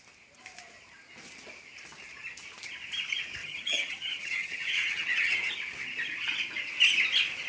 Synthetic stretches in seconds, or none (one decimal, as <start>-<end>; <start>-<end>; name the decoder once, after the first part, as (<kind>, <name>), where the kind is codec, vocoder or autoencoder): 3.4-5.5 (vocoder, HiFi-GAN)